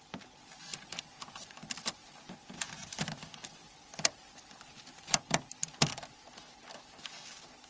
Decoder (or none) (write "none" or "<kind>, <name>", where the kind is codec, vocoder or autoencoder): none